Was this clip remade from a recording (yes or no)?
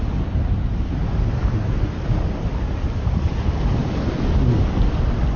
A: no